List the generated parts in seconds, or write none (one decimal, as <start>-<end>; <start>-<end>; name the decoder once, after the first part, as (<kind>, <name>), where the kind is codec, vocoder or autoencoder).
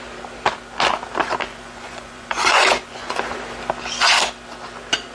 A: 1.4-3.2 (vocoder, Vocos)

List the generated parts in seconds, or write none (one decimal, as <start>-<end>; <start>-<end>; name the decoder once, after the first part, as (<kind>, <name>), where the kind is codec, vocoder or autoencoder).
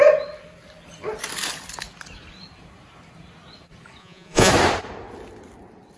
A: 4.0-4.5 (vocoder, Vocos)